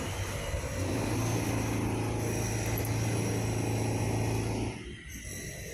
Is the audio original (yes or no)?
yes